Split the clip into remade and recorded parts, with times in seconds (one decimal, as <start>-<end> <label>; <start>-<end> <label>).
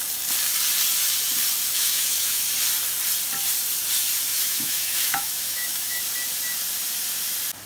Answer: 0.0-1.7 recorded; 1.7-2.4 remade; 2.4-4.3 recorded; 4.3-6.0 remade; 6.0-7.7 recorded